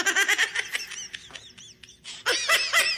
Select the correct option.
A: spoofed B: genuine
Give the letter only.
B